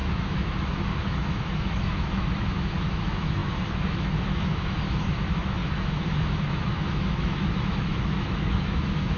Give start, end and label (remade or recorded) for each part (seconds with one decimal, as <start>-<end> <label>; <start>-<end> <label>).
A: 0.0-9.2 remade